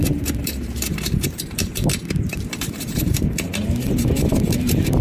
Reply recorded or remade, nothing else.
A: remade